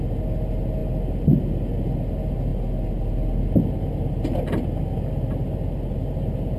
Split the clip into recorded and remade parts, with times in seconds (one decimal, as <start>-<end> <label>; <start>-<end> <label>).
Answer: 0.0-6.6 recorded